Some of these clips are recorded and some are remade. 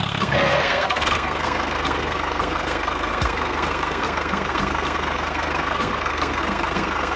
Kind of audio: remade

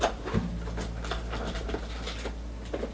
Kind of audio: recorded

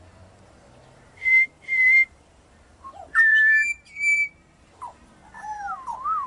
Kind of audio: remade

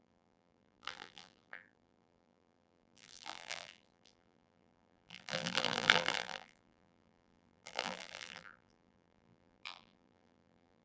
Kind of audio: remade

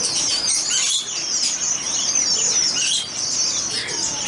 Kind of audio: recorded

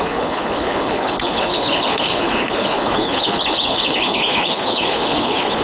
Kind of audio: remade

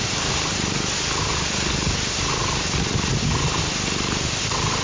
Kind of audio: recorded